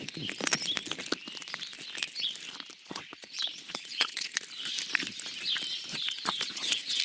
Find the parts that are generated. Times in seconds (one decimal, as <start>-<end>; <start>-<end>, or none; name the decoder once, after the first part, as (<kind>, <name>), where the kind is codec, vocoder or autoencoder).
2.8-4.3 (vocoder, Vocos); 5.9-7.0